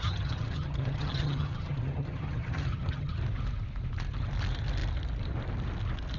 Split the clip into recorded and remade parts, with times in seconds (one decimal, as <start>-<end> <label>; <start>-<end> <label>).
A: 0.0-3.2 remade; 3.2-6.2 recorded